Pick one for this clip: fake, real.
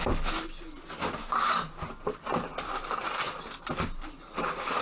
real